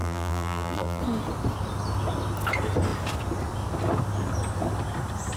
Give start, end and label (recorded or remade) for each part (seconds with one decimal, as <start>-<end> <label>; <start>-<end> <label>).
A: 0.0-1.0 remade; 1.0-5.4 recorded